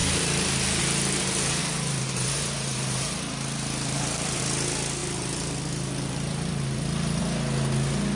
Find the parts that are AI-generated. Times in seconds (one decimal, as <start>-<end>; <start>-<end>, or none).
1.6-4.4; 5.0-7.2